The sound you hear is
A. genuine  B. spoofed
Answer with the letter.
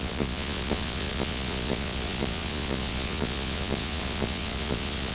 B